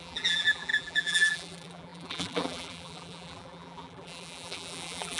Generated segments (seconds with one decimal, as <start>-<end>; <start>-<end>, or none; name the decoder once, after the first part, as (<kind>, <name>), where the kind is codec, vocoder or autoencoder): 0.0-5.2 (vocoder, BigVGAN v2)